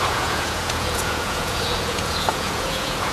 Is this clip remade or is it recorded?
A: remade